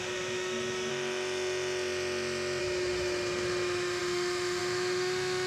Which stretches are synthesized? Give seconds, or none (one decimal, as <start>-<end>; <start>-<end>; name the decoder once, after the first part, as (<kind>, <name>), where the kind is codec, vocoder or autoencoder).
0.0-0.9 (autoencoder, DAC-VAE); 2.6-5.5